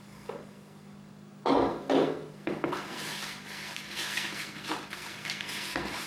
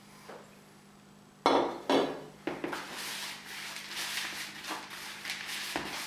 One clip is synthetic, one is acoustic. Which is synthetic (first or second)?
first